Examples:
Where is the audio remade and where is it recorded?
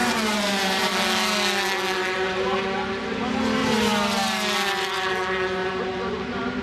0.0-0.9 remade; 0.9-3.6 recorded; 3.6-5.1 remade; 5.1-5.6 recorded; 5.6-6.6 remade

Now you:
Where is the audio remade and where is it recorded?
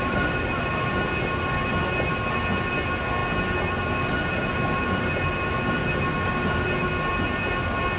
0.0-8.0 recorded